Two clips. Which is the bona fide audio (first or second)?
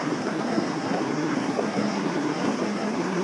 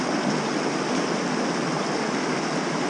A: second